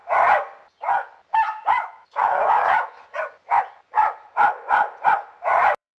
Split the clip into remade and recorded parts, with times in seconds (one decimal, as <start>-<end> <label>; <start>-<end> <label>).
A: 0.0-3.6 recorded; 3.6-6.0 remade